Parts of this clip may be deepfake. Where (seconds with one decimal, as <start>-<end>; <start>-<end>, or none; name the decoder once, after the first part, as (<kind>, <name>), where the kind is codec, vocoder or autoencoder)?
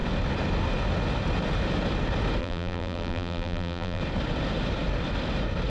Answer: 2.4-4.0 (vocoder, BigVGAN v2)